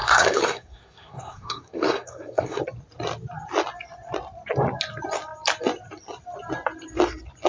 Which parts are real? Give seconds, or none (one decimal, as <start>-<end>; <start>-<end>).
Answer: 2.6-7.5